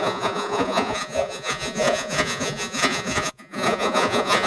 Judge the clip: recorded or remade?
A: remade